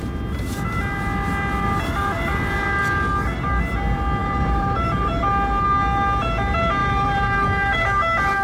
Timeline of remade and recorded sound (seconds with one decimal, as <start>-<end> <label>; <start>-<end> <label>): 0.0-4.2 recorded; 4.2-5.2 remade; 5.2-6.8 recorded; 6.8-7.8 remade; 7.8-8.4 recorded